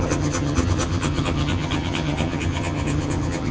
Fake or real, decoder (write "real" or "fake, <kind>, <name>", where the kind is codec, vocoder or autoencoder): fake, vocoder, HiFi-GAN